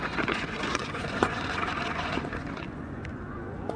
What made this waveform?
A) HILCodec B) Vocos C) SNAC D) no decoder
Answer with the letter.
B